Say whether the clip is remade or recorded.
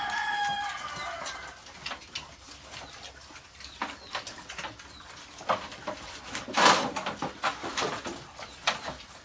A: recorded